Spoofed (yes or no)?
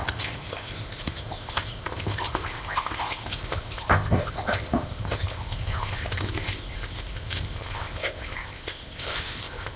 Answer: yes